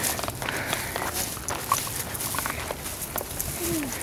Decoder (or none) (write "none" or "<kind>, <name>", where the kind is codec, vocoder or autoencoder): none